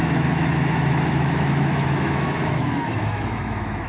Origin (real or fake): fake